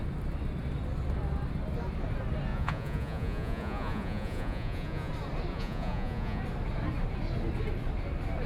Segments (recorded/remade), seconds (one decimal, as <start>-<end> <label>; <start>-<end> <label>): 0.0-2.5 recorded; 2.5-5.1 remade; 5.1-5.5 recorded; 5.5-6.4 remade; 6.4-8.5 recorded